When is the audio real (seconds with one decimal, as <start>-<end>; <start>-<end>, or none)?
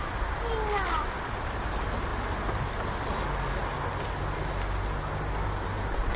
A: 0.0-6.2